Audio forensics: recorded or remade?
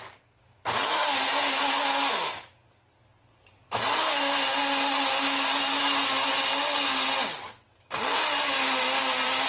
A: recorded